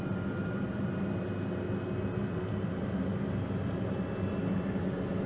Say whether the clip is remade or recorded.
recorded